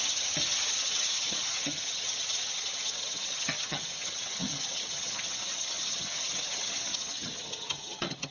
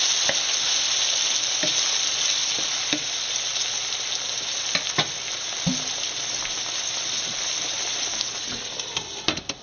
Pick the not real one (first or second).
first